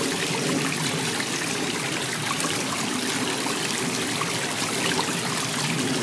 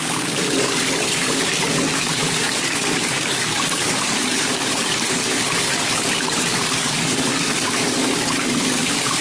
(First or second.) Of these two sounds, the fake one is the second